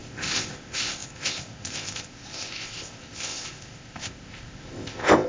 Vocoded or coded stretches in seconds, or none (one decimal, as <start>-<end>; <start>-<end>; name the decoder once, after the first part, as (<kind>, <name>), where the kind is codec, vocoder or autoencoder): 0.0-5.3 (codec, ZipCodec)